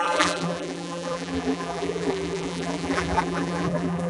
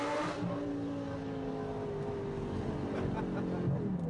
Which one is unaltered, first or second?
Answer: second